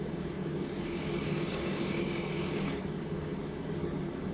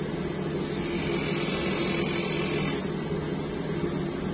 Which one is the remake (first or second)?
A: first